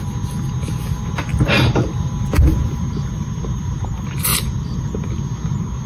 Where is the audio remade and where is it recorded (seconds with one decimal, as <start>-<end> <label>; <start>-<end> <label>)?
0.0-1.3 recorded; 1.3-2.1 remade; 2.1-4.3 recorded; 4.3-4.9 remade; 4.9-5.9 recorded